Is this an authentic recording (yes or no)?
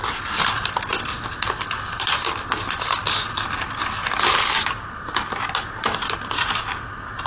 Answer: yes